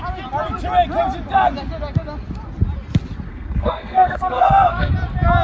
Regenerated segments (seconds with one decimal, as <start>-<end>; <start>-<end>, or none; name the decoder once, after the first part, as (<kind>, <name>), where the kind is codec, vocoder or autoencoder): 3.3-4.9 (codec, SNAC)